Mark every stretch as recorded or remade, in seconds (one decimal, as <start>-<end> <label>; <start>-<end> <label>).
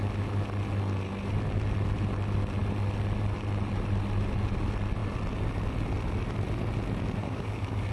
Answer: 0.0-7.2 recorded; 7.2-7.9 remade